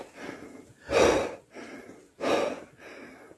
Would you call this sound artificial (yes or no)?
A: no